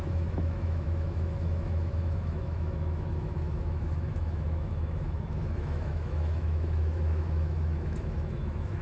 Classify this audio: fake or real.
fake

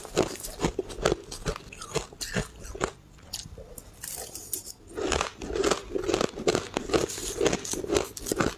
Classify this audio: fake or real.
real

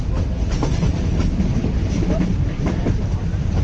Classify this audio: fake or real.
real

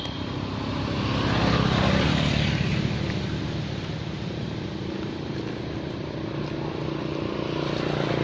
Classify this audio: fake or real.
real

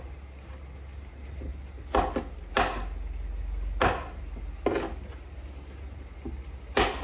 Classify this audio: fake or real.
real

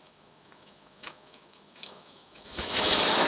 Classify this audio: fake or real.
fake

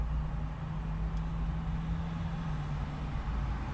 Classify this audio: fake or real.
real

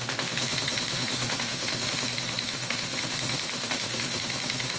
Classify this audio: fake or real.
fake